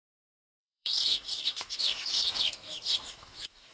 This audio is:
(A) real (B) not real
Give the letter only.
B